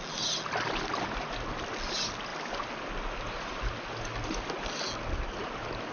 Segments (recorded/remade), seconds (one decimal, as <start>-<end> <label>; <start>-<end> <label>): 0.0-5.9 recorded